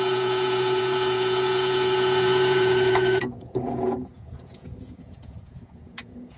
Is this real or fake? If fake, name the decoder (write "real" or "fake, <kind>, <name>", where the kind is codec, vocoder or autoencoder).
fake, vocoder, Vocos